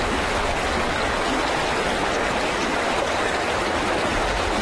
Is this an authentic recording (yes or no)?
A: yes